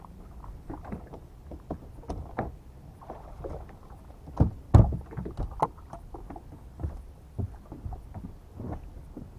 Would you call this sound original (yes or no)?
yes